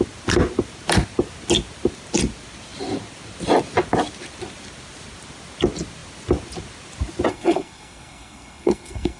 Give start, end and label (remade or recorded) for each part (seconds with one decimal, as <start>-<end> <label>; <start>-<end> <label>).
0.0-7.3 recorded; 7.3-9.2 remade